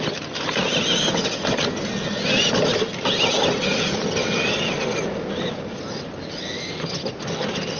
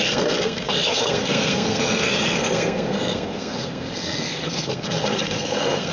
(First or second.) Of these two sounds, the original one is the first